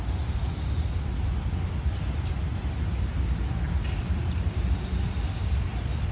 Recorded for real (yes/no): yes